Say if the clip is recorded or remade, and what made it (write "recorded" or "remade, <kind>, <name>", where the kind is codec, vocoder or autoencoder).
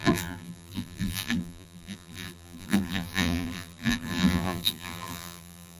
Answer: remade, vocoder, BigVGAN v2